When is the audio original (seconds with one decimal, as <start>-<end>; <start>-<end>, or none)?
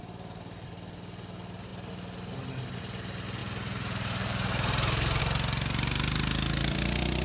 0.0-3.4; 5.2-7.2